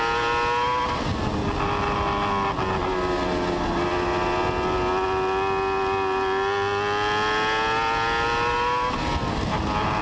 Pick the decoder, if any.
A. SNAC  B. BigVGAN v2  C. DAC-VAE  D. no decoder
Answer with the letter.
D